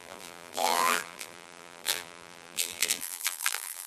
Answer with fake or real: fake